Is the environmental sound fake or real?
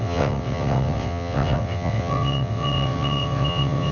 fake